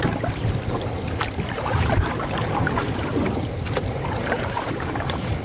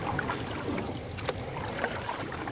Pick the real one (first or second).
second